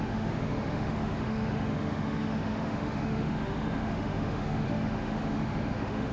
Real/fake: fake